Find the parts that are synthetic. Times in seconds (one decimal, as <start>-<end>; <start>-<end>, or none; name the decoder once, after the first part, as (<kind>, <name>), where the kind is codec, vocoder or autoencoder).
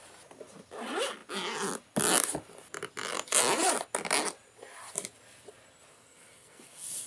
5.9-7.1 (codec, SNAC)